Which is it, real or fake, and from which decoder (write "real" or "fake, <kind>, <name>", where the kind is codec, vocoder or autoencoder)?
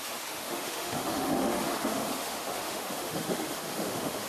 fake, autoencoder, DAC-VAE